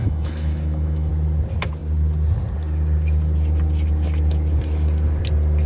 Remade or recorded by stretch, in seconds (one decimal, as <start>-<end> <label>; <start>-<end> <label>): 0.0-1.1 remade; 1.1-5.7 recorded